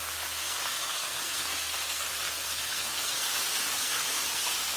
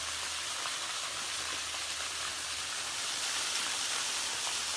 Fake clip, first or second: first